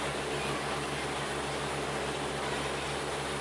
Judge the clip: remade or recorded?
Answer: recorded